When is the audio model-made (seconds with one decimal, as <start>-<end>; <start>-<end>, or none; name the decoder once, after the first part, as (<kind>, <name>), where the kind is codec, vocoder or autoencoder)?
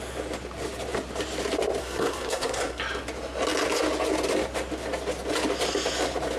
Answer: 1.8-2.8 (codec, SNAC)